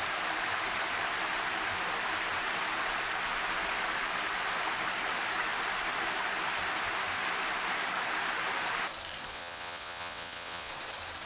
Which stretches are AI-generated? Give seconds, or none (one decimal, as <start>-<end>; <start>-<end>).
9.3-10.7